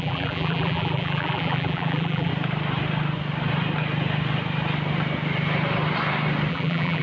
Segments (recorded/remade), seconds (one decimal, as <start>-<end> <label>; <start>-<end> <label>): 0.0-2.3 remade; 2.3-6.5 recorded; 6.5-7.0 remade